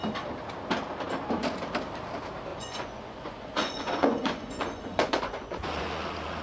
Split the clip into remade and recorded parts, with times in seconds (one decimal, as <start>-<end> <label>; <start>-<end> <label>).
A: 0.0-2.5 recorded; 2.5-6.4 remade